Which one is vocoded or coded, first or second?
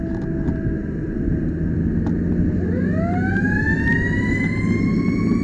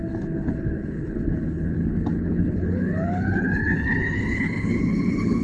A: second